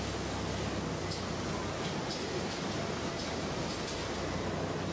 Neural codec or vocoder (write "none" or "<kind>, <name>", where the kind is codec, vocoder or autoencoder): none